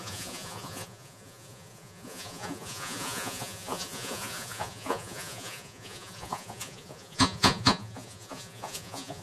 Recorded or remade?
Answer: remade